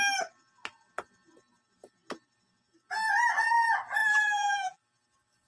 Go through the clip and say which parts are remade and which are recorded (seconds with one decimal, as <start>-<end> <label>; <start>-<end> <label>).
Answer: 0.0-4.0 recorded; 4.0-4.8 remade; 4.8-5.5 recorded